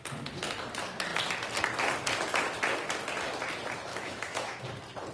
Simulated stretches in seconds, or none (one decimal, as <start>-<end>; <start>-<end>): 3.9-4.6